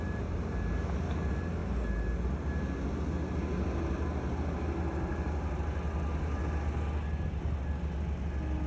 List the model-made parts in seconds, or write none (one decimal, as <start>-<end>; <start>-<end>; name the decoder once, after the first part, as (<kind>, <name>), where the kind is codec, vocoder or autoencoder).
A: none